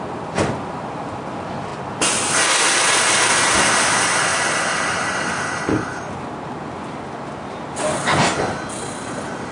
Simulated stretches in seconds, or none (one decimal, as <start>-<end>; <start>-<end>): none